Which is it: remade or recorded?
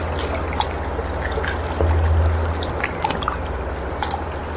recorded